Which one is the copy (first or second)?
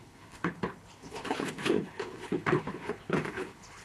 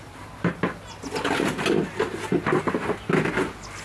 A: first